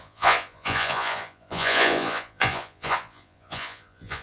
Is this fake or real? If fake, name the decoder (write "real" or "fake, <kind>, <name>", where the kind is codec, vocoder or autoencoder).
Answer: fake, vocoder, Vocos